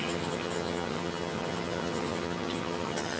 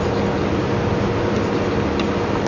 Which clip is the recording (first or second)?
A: second